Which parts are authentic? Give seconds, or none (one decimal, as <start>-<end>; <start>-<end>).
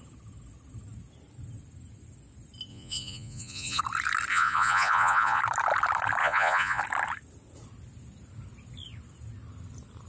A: 0.0-2.7; 3.8-4.3; 5.4-6.2; 6.8-10.1